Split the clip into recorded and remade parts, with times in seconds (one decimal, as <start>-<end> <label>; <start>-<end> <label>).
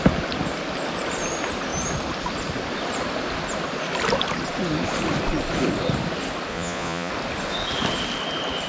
0.0-6.5 recorded; 6.5-7.1 remade; 7.1-8.7 recorded